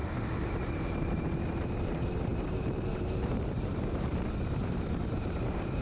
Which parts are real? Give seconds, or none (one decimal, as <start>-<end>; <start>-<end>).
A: 0.0-0.5